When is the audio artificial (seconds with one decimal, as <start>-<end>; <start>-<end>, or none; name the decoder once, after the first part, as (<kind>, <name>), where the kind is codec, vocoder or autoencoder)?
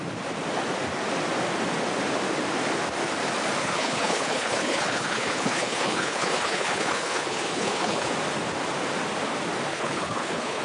3.6-8.1 (codec, HILCodec); 9.7-10.6